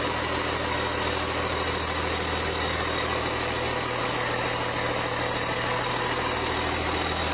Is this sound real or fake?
real